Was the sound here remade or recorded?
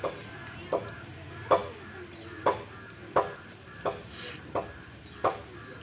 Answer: recorded